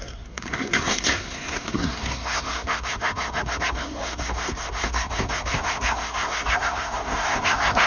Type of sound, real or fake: fake